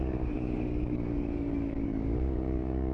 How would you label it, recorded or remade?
remade